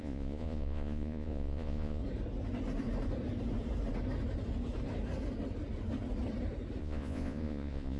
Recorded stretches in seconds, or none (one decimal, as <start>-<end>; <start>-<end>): 2.0-6.8